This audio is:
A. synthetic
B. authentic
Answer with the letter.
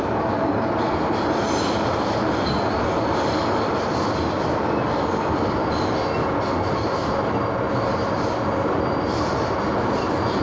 B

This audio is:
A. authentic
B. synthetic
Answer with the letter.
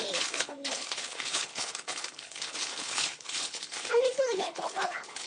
B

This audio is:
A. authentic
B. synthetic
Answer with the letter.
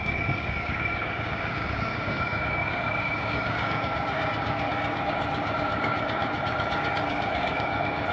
B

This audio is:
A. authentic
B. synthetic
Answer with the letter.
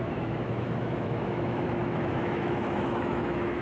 B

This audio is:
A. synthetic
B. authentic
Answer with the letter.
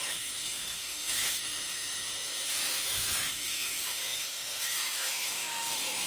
A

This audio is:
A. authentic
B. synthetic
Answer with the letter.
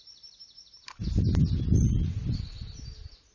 A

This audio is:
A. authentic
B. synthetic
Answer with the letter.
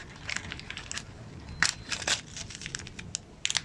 A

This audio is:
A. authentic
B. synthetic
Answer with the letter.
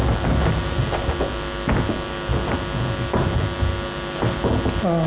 A